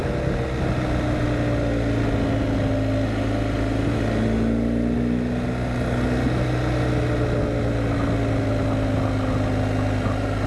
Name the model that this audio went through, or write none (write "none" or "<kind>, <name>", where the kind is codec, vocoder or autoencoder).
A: none